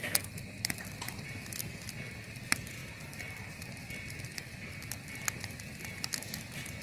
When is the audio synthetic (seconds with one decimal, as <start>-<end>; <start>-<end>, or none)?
2.8-3.7